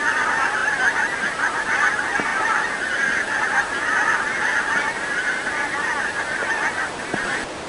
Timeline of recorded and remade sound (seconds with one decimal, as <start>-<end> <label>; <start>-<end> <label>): 0.0-7.7 recorded